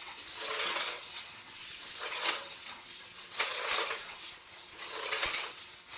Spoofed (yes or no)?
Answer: yes